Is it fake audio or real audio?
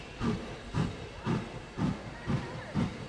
fake